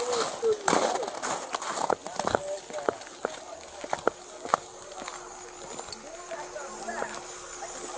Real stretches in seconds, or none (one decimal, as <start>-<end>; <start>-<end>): 0.0-8.0